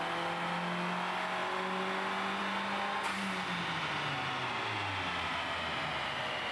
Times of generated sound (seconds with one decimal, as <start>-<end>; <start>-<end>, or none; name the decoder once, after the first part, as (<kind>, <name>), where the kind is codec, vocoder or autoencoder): none